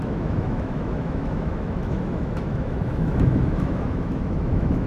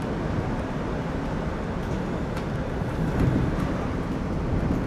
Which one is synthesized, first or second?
first